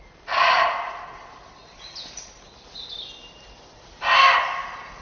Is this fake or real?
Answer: real